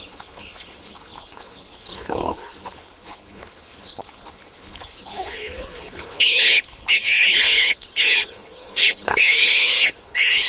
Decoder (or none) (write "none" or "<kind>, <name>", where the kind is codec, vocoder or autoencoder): codec, HILCodec